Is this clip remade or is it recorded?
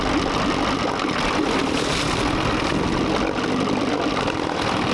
recorded